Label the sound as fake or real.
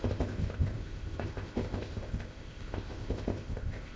fake